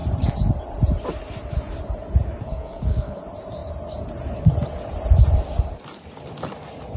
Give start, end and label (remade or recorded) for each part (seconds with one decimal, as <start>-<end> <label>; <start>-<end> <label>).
0.0-2.4 recorded; 2.4-3.2 remade; 3.2-7.0 recorded